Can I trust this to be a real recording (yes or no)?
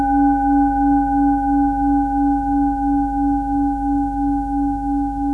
yes